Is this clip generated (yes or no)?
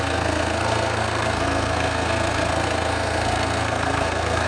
yes